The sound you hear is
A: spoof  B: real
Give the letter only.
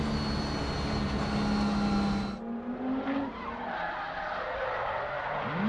B